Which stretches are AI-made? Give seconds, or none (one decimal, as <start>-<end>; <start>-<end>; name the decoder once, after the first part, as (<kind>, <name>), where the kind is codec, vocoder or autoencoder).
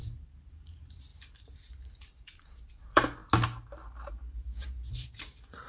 0.5-3.2 (vocoder, BigVGAN v2); 4.1-5.7